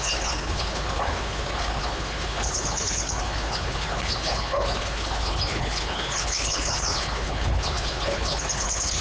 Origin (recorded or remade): remade